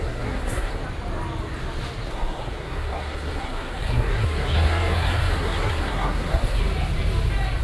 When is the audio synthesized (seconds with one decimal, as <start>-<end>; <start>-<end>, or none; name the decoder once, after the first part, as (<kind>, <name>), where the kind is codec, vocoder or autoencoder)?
0.0-0.8 (codec, SNAC); 2.1-6.6